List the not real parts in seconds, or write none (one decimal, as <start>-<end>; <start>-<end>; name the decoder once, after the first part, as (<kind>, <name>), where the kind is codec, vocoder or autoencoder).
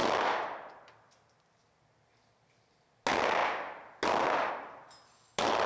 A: none